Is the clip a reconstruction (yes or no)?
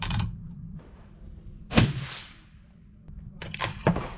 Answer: yes